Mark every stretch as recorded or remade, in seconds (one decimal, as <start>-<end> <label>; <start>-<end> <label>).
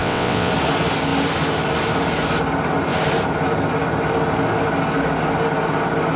0.0-0.5 remade; 0.5-6.2 recorded